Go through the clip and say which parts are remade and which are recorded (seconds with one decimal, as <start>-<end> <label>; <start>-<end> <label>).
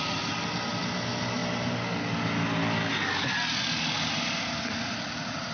0.0-5.5 recorded